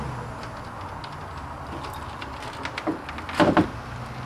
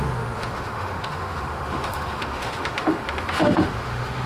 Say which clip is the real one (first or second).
first